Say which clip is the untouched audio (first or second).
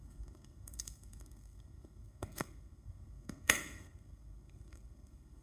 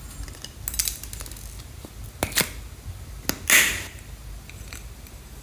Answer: second